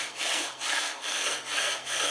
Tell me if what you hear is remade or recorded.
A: remade